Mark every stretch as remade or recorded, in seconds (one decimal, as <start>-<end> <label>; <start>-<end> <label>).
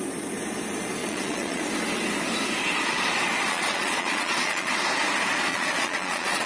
0.0-1.0 recorded; 1.0-1.6 remade; 1.6-3.5 recorded; 3.5-4.7 remade; 4.7-5.5 recorded; 5.5-6.5 remade